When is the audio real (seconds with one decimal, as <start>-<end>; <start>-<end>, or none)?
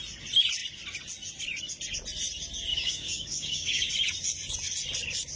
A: 0.0-2.7; 3.9-5.4